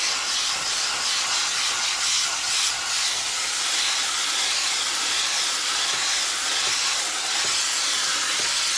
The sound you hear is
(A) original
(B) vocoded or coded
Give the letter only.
A